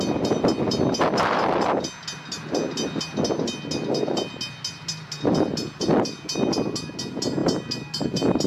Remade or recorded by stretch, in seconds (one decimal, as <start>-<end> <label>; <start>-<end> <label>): 0.0-8.5 recorded